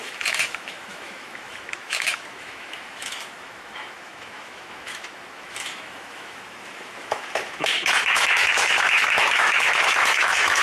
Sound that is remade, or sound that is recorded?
remade